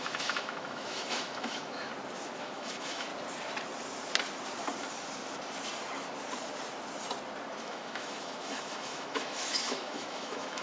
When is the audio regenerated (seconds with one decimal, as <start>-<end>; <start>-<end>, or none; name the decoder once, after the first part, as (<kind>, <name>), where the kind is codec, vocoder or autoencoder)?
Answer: 0.0-1.9 (autoencoder, DAC-VAE); 2.4-3.1; 7.6-10.6